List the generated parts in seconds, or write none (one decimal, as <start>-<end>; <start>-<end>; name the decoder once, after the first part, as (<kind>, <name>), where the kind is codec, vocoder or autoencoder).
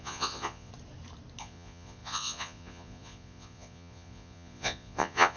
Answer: 0.0-0.7 (vocoder, Vocos); 1.4-5.4